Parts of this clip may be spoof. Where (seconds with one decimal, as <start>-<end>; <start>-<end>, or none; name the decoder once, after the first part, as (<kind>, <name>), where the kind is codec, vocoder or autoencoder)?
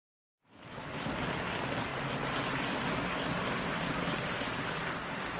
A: 0.0-0.9 (autoencoder, DAC-VAE)